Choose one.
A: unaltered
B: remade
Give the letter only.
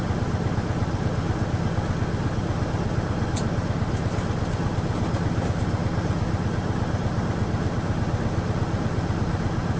A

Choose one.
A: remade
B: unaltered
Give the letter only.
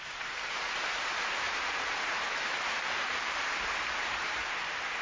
A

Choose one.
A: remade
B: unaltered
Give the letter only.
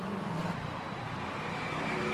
A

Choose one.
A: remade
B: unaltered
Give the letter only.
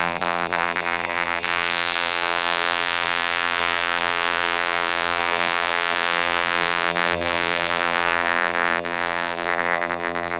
A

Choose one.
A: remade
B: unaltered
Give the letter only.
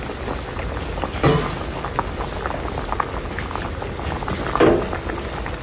B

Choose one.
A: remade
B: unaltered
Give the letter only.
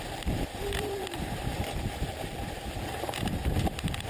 A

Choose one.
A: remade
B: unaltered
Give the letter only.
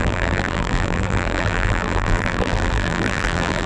A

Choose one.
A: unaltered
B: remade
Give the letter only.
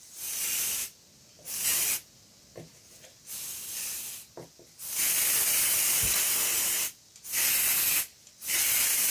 A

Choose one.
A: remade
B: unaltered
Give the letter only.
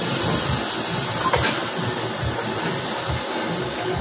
B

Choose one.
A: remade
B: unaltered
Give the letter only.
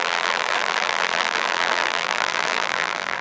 A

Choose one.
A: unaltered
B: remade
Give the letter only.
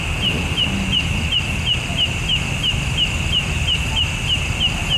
A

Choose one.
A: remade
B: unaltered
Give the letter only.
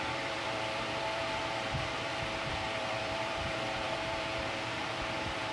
A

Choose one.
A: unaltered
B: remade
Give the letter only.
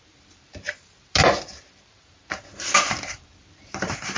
B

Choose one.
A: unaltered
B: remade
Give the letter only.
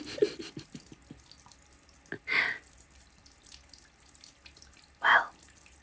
A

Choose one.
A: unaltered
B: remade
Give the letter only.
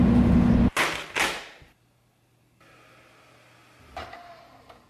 A